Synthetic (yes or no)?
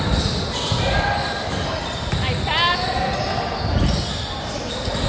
no